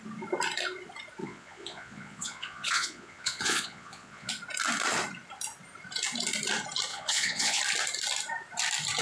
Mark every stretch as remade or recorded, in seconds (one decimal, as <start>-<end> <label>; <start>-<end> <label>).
0.0-1.2 recorded; 1.2-4.3 remade; 4.3-6.9 recorded; 6.9-7.6 remade; 7.6-9.0 recorded